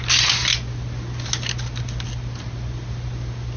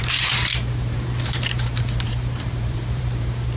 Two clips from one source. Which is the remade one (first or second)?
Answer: second